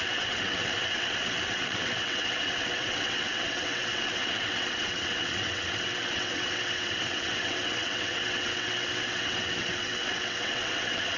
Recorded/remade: remade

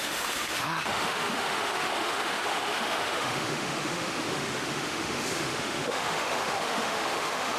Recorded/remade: remade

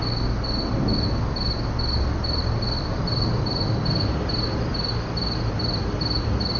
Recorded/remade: recorded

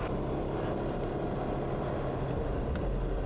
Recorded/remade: recorded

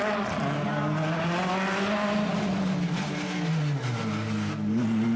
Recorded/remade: recorded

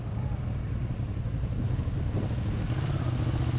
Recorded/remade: recorded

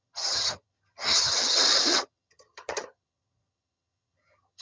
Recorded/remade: remade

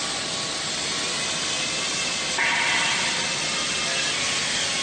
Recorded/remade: recorded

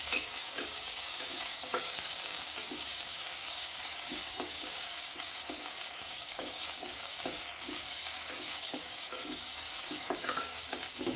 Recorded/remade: remade